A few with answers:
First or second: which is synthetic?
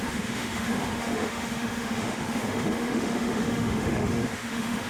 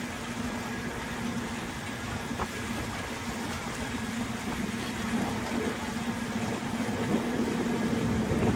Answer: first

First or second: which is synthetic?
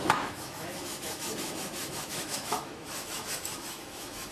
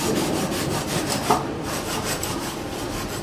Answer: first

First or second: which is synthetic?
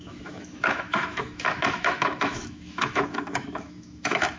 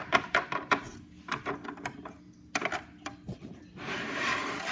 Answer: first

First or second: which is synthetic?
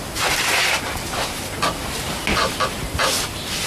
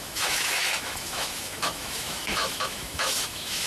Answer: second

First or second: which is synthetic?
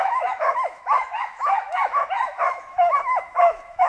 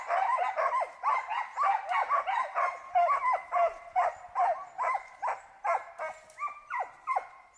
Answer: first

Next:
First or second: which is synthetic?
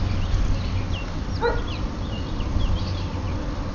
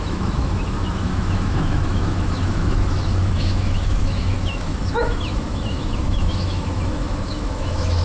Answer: second